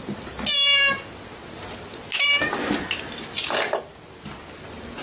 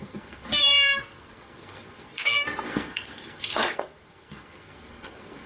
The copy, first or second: second